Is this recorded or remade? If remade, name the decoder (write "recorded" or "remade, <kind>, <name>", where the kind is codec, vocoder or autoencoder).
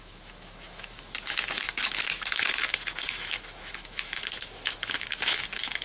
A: remade, autoencoder, DAC-VAE